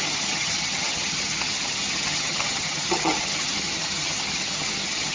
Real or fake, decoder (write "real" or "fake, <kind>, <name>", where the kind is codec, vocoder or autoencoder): fake, vocoder, HiFi-GAN